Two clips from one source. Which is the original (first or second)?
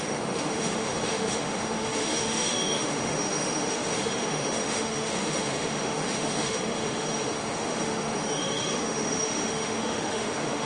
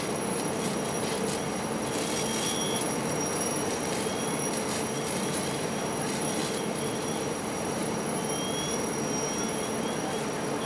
second